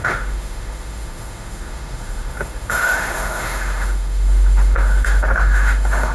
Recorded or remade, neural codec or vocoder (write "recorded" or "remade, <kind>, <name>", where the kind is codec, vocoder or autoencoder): remade, autoencoder, DAC-VAE